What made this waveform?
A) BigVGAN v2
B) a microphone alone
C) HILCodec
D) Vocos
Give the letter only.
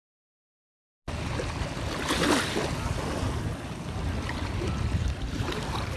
B